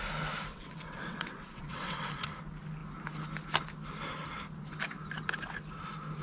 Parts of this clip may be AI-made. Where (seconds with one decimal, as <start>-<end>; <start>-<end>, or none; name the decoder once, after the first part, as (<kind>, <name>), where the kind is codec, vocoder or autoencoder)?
0.5-2.3 (vocoder, WaveNeXt)